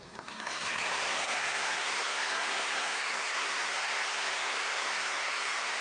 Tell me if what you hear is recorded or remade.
remade